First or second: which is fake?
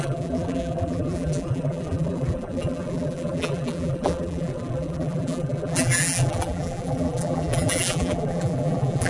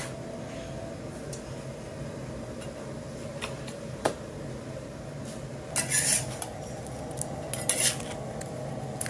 first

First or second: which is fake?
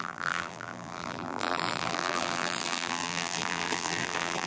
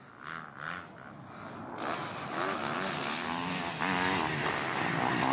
first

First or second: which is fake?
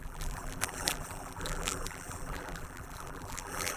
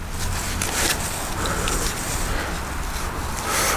first